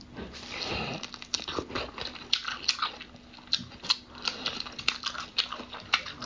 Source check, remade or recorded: recorded